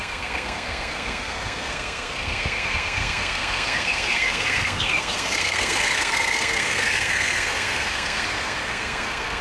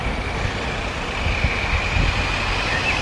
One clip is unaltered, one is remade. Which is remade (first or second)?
first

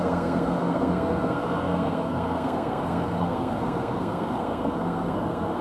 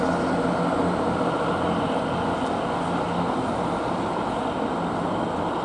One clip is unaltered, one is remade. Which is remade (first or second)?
first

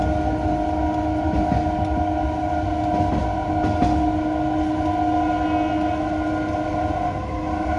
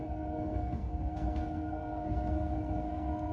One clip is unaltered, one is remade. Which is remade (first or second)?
second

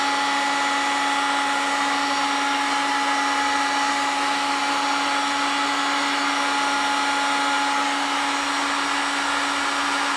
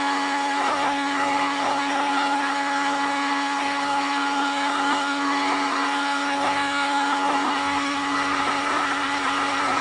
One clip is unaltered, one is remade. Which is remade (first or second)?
second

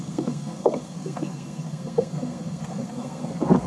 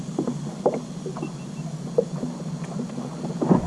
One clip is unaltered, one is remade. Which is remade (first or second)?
first